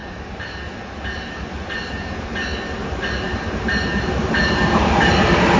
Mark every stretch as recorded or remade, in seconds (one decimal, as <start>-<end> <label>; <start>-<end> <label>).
0.0-0.6 remade; 0.6-2.8 recorded; 2.8-5.1 remade; 5.1-5.6 recorded